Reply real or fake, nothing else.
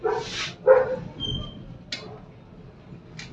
real